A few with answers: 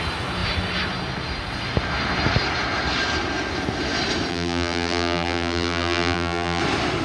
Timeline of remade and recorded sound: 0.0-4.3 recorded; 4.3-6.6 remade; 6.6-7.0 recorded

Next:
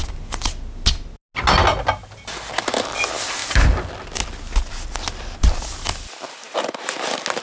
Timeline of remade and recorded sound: 0.0-3.4 recorded; 3.4-4.1 remade; 4.1-7.4 recorded

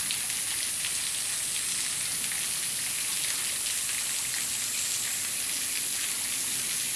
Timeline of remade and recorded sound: 0.0-7.0 recorded

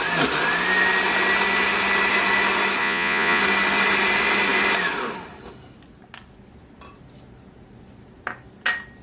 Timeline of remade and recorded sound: 0.0-2.8 recorded; 2.8-3.4 remade; 3.4-9.0 recorded

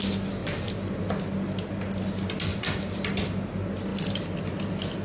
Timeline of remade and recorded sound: 0.0-0.4 recorded; 0.4-1.1 remade; 1.1-2.5 recorded; 2.5-3.1 remade; 3.1-3.9 recorded; 3.9-4.6 remade; 4.6-5.0 recorded

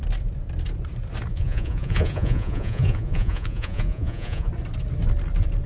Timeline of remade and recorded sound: 0.0-1.3 recorded; 1.3-4.5 remade; 4.5-5.7 recorded

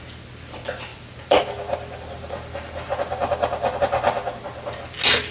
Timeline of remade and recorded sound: 0.0-0.9 recorded; 0.9-3.8 remade; 3.8-5.3 recorded